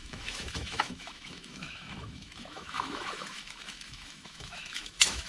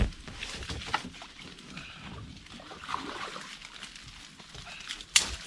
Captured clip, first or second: second